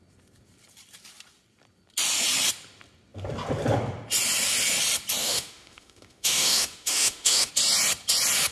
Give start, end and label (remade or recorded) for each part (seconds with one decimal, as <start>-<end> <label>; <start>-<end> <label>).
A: 0.0-5.2 recorded; 5.2-7.5 remade; 7.5-8.5 recorded